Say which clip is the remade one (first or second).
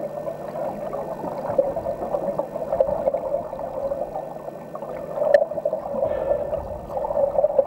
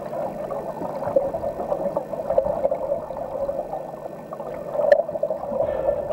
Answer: second